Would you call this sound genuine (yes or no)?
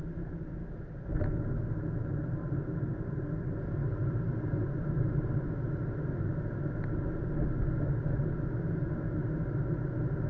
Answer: yes